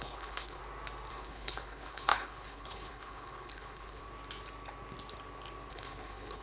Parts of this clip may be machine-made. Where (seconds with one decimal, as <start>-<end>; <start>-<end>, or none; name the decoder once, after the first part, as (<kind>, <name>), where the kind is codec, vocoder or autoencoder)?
0.0-0.6 (codec, HILCodec); 1.1-4.0; 5.7-6.4